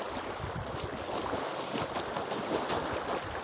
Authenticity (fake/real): real